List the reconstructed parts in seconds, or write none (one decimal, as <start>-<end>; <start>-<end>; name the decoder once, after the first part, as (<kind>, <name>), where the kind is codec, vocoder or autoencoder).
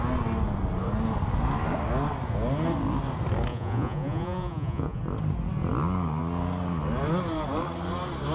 3.5-5.0 (vocoder, Vocos)